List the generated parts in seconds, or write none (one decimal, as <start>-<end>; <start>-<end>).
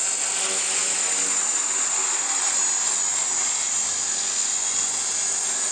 4.4-5.0